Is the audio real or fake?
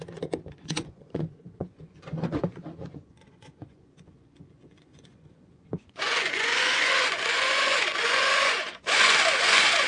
fake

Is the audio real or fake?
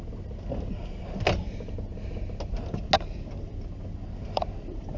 real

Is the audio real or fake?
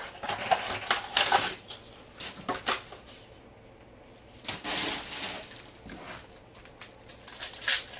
real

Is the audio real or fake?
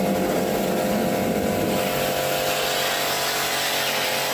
real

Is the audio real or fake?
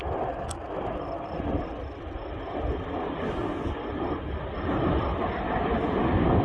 real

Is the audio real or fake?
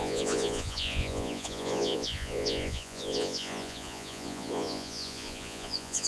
fake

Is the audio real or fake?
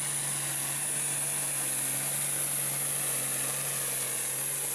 real